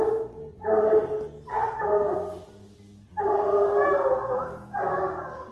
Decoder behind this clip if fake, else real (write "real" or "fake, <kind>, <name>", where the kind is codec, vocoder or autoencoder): real